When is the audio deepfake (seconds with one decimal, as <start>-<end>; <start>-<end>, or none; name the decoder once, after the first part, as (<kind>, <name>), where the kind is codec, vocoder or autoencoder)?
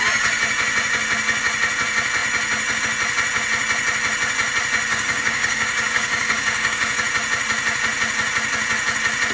4.9-7.0 (codec, DAC)